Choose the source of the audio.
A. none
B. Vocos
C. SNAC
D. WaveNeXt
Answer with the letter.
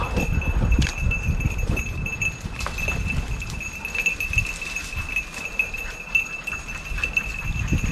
A